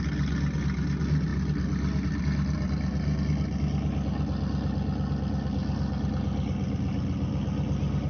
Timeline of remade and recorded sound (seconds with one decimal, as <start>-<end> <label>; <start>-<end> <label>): 0.0-8.1 recorded